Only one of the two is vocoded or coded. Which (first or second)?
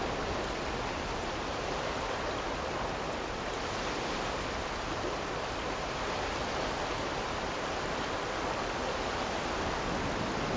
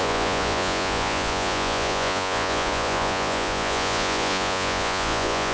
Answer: second